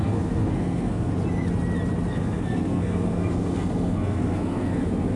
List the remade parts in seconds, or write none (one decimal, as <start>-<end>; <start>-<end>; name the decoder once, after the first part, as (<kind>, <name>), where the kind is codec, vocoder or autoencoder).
0.0-1.1 (codec, SNAC); 2.1-5.2